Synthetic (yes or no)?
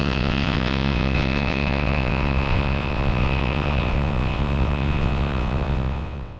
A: yes